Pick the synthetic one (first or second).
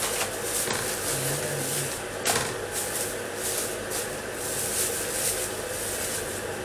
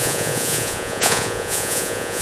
second